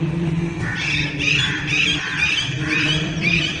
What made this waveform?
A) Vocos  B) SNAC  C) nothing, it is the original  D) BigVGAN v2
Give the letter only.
D